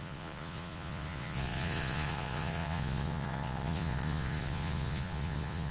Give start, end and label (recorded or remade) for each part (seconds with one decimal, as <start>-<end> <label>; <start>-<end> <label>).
0.0-5.7 remade